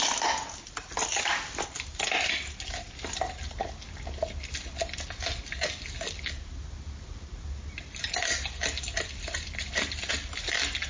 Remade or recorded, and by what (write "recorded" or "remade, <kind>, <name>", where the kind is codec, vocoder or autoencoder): recorded